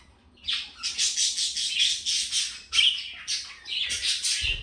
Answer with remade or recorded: recorded